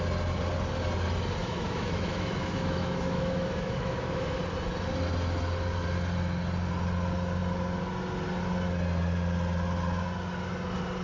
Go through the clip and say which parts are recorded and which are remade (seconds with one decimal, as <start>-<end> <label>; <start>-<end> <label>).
0.0-1.4 recorded; 1.4-4.4 remade; 4.4-11.0 recorded